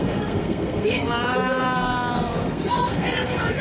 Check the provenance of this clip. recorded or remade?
remade